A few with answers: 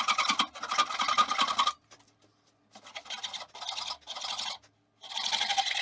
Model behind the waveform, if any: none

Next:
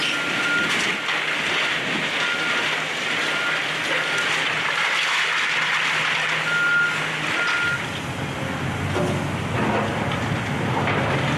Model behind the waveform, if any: none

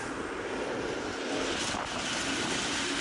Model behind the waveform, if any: none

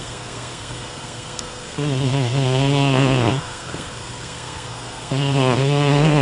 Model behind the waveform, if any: codec, SNAC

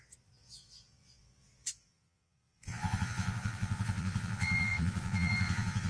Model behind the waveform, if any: vocoder, Vocos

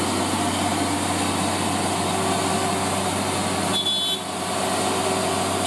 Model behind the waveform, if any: none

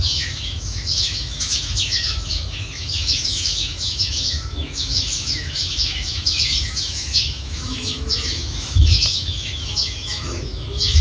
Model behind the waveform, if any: autoencoder, DAC-VAE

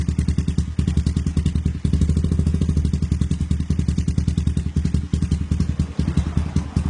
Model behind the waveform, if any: none